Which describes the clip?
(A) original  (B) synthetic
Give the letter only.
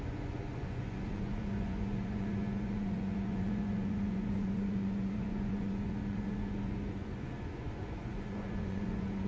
B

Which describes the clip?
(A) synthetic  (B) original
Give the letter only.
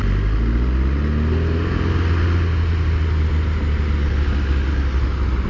B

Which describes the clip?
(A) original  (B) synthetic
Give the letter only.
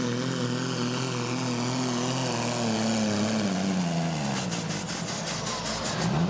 A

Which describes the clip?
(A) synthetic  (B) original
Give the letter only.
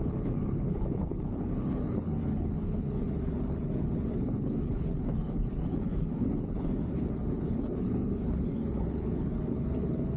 A